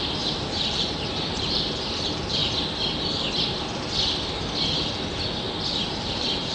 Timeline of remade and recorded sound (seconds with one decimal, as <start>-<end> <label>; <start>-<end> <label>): 0.0-2.4 remade; 2.4-5.9 recorded; 5.9-6.5 remade